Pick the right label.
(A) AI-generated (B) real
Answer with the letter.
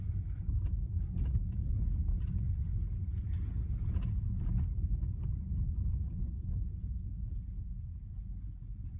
B